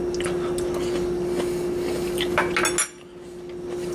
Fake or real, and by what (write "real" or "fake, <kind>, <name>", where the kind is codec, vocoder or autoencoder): real